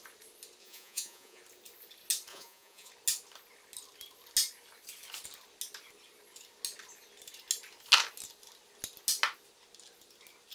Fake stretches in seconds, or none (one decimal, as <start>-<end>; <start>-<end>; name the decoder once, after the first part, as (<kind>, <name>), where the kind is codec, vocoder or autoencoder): 0.6-1.4 (vocoder, Vocos); 2.3-2.9